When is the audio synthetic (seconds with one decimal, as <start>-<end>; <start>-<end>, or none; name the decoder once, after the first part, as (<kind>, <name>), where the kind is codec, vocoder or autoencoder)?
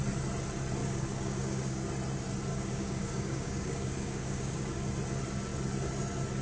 0.8-1.9 (codec, DAC); 2.5-4.9